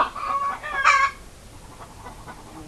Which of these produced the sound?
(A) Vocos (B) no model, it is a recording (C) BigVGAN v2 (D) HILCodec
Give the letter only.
B